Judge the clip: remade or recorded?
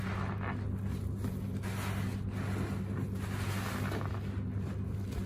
recorded